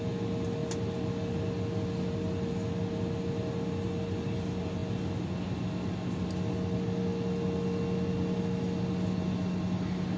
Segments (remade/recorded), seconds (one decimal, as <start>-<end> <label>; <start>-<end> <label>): 0.0-10.2 recorded